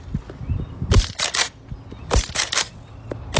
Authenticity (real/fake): real